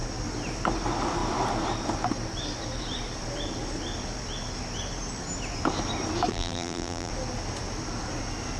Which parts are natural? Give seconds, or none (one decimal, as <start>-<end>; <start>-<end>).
0.0-6.3; 7.1-8.6